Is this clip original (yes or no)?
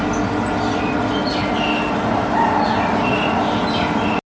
yes